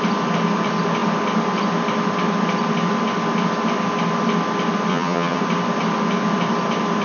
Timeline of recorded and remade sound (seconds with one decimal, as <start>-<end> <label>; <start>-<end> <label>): 0.0-4.9 recorded; 4.9-5.4 remade; 5.4-7.0 recorded